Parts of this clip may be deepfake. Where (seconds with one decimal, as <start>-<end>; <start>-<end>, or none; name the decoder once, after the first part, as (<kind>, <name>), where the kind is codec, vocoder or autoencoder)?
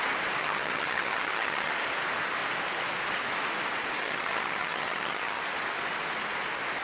0.4-1.7 (vocoder, HiFi-GAN); 4.0-5.4